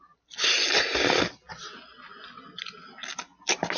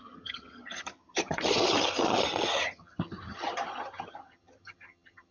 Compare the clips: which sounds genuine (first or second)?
first